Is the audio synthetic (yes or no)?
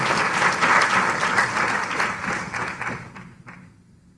no